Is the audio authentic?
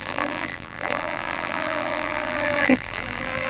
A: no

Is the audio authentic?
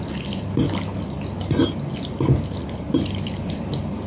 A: yes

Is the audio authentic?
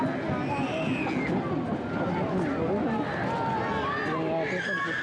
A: yes